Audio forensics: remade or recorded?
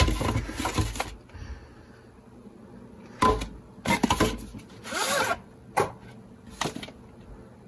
recorded